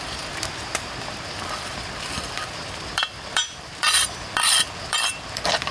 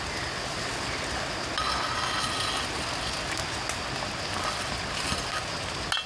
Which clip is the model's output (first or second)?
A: first